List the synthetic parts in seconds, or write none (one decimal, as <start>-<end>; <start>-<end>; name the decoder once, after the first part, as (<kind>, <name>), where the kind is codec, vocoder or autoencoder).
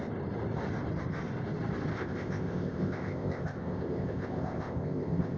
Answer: 1.9-5.4 (codec, ZipCodec)